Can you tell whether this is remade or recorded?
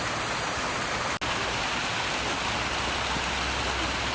recorded